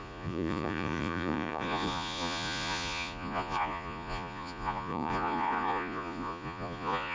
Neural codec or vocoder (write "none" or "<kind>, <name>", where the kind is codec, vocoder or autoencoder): vocoder, Vocos